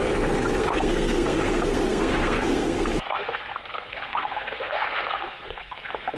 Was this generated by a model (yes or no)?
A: yes